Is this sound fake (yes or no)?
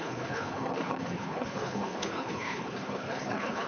yes